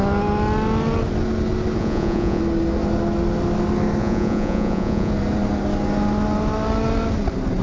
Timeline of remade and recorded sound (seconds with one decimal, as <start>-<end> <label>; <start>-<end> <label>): 0.0-1.8 recorded; 1.8-2.4 remade; 2.4-4.0 recorded; 4.0-5.1 remade; 5.1-7.6 recorded